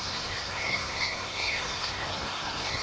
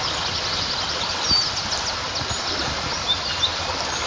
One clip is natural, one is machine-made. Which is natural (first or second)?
second